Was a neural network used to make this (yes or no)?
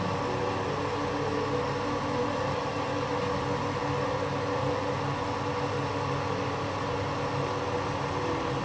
no